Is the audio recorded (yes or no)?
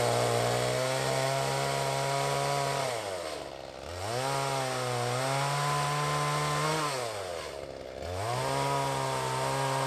yes